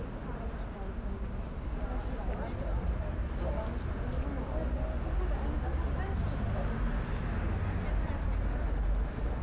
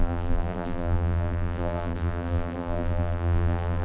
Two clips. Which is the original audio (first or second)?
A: first